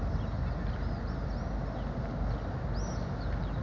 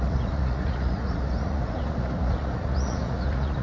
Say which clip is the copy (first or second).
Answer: second